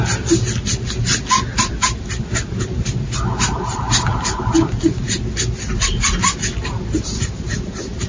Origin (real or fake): real